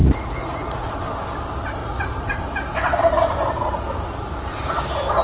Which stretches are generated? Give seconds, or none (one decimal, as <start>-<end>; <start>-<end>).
0.0-1.0; 1.8-2.4